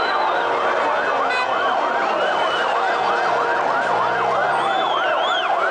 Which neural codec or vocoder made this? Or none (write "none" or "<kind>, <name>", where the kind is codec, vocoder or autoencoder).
none